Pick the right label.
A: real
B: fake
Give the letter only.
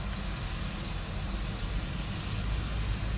A